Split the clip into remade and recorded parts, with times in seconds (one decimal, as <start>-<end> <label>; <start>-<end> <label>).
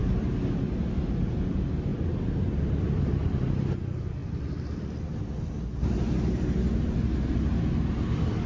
0.0-4.2 recorded; 4.2-5.5 remade; 5.5-8.5 recorded